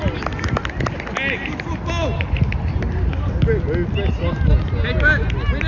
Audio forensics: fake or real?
real